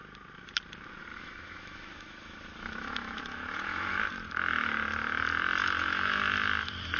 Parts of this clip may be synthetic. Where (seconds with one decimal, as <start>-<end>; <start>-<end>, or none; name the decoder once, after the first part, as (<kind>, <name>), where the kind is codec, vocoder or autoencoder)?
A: 1.1-4.0 (autoencoder, DAC-VAE); 5.6-6.2